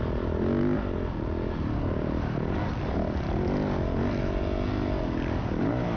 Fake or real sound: real